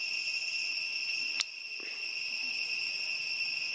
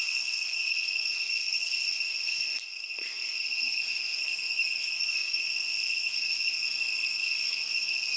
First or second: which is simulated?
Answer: second